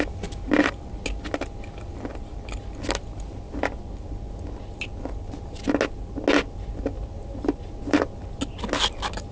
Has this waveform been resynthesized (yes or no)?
no